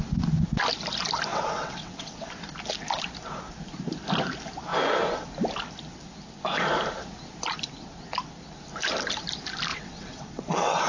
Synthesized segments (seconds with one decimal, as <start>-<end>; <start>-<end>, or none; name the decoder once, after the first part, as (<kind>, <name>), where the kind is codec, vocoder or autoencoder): 1.3-2.3 (vocoder, WaveNeXt); 9.7-10.9